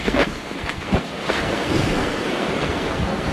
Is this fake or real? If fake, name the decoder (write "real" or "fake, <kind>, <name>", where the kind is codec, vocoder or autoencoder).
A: fake, codec, SNAC